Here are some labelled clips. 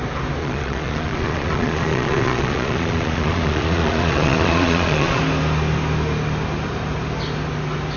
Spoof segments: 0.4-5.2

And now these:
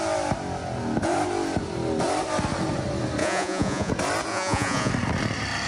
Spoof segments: 3.2-3.9; 4.3-4.9

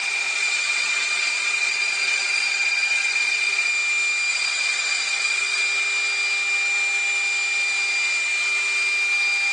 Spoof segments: 0.0-3.7; 4.3-5.6

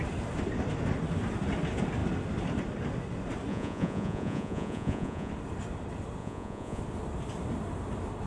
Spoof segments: 3.5-5.3; 6.2-6.8